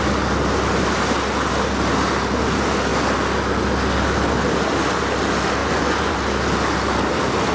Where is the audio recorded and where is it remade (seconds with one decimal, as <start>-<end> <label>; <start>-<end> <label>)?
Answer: 0.0-5.6 recorded; 5.6-6.2 remade; 6.2-7.5 recorded